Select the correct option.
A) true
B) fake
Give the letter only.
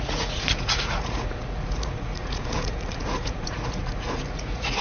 B